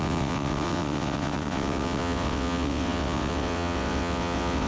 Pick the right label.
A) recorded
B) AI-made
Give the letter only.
B